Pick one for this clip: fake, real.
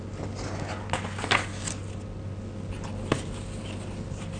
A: real